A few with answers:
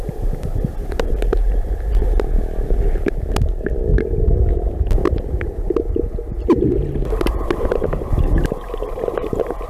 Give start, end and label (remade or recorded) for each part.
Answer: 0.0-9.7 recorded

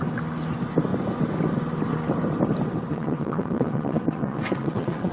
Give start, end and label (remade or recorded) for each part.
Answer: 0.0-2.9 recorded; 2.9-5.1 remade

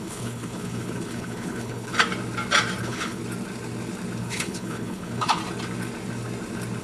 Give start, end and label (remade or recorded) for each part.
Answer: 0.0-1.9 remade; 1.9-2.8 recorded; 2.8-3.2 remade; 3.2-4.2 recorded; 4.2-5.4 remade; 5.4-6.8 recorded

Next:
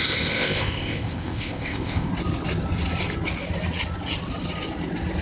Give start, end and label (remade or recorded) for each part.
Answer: 0.0-2.1 remade; 2.1-5.2 recorded

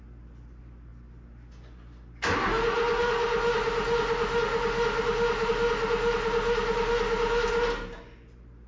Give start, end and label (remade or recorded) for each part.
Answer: 0.0-8.7 recorded